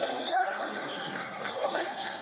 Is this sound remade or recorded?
remade